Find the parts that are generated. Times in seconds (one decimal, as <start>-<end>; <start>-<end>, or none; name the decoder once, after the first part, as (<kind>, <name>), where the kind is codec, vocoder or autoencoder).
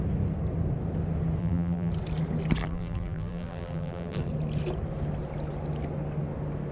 1.4-1.9 (vocoder, BigVGAN v2); 2.6-4.3